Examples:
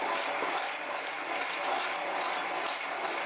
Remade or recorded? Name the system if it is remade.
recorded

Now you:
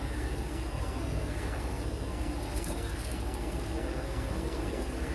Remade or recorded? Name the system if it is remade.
remade, codec, SNAC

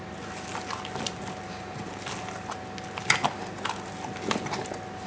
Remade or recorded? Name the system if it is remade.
recorded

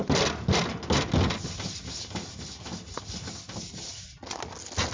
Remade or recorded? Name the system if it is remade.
recorded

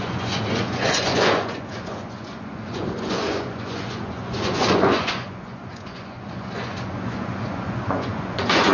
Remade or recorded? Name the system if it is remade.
remade, vocoder, Vocos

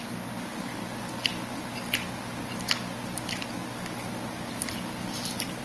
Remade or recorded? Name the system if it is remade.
recorded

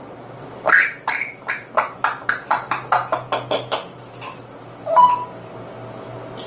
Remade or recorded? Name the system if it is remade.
recorded